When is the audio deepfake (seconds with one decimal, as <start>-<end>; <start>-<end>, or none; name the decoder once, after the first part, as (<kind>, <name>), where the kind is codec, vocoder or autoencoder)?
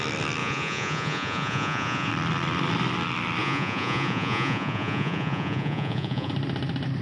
0.4-2.1 (vocoder, Vocos); 3.4-6.3